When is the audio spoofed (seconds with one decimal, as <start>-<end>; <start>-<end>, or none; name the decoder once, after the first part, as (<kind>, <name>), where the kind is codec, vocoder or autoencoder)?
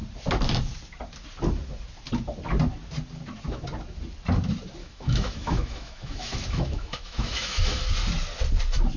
4.8-7.9 (autoencoder, DAC-VAE)